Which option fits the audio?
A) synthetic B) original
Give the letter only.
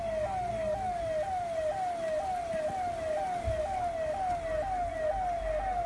B